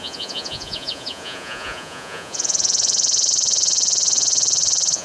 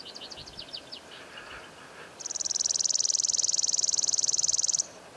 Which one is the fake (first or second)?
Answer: first